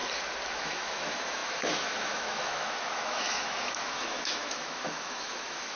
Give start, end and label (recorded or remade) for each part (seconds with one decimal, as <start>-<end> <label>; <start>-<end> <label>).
0.0-0.5 recorded; 0.5-5.8 remade